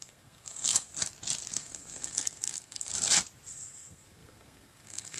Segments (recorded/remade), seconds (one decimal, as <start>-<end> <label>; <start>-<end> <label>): 0.0-0.9 remade; 0.9-1.5 recorded; 1.5-2.9 remade; 2.9-3.5 recorded; 3.5-5.2 remade